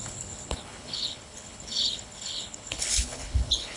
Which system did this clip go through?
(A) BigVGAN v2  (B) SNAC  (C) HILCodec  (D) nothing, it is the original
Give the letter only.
C